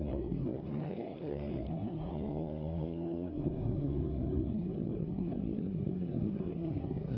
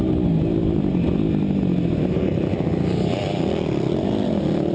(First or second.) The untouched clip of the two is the second